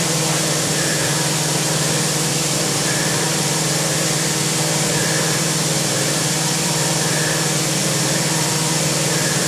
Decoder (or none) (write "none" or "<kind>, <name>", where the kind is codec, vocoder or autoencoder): vocoder, BigVGAN v2